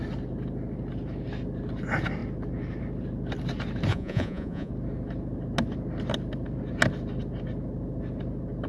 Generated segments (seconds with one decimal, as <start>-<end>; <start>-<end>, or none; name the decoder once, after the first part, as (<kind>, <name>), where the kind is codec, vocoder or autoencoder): 3.9-4.7 (vocoder, Vocos)